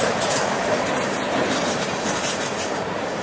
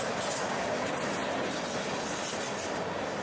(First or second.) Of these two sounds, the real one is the second